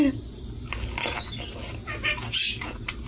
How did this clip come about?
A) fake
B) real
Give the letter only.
B